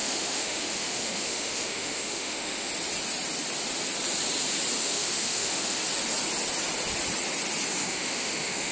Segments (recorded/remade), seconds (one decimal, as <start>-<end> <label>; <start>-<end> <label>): 0.0-2.7 remade; 2.7-4.8 recorded; 4.8-5.8 remade; 5.8-7.8 recorded; 7.8-8.7 remade